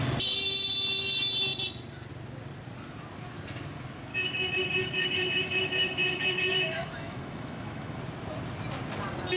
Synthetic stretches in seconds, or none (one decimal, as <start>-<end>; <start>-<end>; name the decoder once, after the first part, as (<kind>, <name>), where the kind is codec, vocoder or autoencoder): 4.1-8.0 (autoencoder, DAC-VAE)